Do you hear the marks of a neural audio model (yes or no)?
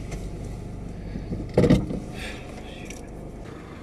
no